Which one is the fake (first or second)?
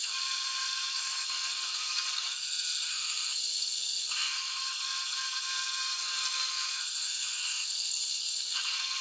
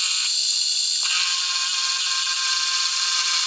first